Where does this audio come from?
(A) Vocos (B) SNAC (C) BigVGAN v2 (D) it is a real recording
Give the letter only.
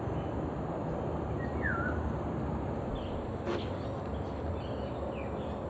D